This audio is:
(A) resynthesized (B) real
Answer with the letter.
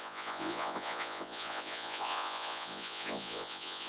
A